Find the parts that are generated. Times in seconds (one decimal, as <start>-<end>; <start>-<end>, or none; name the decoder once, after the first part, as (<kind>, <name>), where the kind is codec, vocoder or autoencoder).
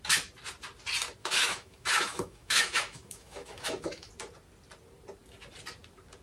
1.2-4.1 (autoencoder, DAC-VAE)